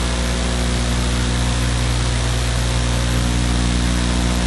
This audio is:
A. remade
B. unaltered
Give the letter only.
B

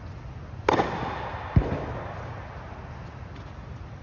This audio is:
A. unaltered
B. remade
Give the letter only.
A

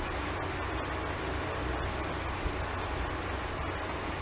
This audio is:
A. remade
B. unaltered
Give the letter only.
B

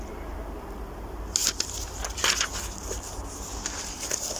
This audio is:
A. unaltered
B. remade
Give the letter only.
A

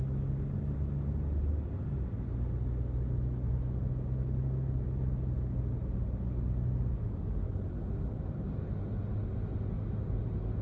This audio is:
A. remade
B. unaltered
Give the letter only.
B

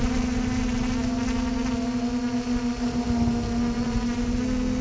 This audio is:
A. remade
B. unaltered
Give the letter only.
B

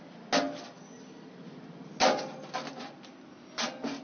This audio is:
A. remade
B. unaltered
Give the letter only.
B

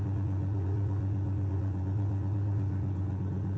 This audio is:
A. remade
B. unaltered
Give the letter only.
A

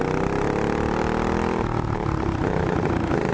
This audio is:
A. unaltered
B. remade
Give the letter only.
A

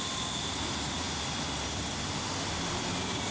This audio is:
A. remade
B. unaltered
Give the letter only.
B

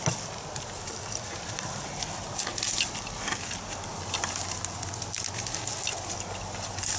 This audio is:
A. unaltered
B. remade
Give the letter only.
A